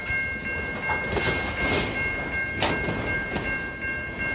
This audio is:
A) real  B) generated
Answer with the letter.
A